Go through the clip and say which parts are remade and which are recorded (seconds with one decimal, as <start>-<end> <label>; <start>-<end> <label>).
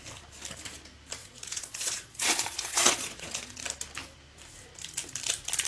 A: 0.0-1.2 recorded; 1.2-3.6 remade; 3.6-5.7 recorded